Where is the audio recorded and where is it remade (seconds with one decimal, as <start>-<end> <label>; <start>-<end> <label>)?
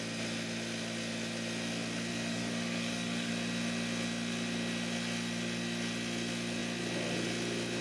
0.0-2.1 recorded; 2.1-3.3 remade; 3.3-7.8 recorded